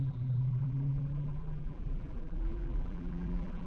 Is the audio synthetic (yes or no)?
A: yes